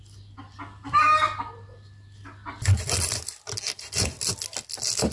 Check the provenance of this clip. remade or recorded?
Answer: recorded